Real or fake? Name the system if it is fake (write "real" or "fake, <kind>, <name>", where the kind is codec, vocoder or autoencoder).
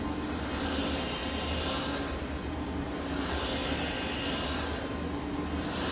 real